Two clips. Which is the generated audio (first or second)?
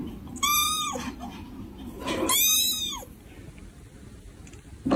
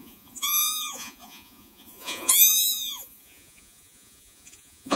second